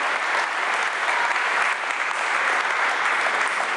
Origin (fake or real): real